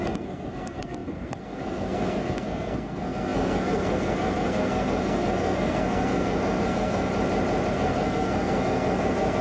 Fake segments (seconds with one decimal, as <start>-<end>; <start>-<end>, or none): 0.0-7.1; 7.7-9.4